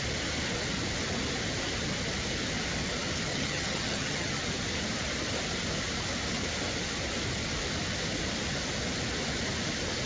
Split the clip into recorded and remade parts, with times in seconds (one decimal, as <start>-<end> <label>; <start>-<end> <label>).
0.0-3.3 recorded; 3.3-4.4 remade; 4.4-10.1 recorded